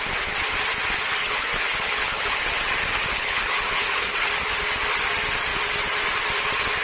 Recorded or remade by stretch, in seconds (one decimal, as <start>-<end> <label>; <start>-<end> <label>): 0.0-1.2 recorded; 1.2-2.4 remade; 2.4-3.1 recorded; 3.1-4.3 remade; 4.3-6.8 recorded